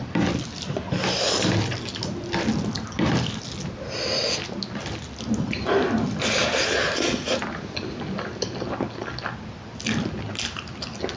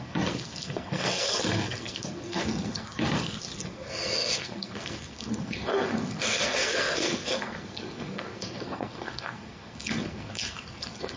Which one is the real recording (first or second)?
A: first